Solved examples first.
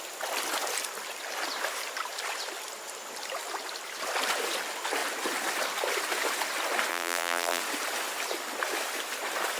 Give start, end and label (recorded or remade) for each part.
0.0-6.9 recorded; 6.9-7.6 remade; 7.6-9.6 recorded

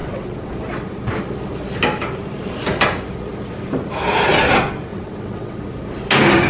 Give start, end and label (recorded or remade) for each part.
0.0-0.5 remade; 0.5-4.9 recorded; 4.9-5.6 remade; 5.6-6.5 recorded

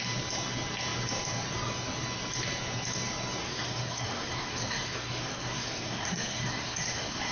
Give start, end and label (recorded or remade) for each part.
0.0-3.4 recorded; 3.4-7.3 remade